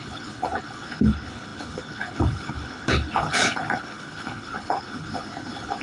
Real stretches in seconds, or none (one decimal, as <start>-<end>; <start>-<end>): none